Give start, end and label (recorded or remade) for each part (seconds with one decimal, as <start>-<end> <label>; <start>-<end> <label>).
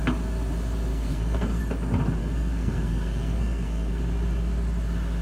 0.0-0.9 recorded; 0.9-1.6 remade; 1.6-2.2 recorded; 2.2-4.0 remade; 4.0-5.2 recorded